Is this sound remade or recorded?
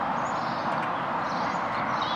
recorded